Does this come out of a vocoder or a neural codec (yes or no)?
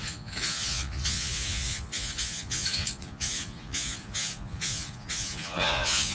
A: yes